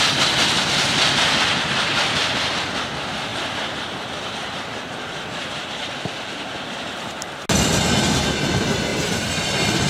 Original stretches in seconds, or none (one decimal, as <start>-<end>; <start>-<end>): 0.0-3.3; 6.0-9.9